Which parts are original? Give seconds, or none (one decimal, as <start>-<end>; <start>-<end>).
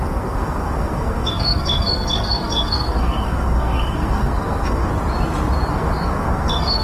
4.9-5.7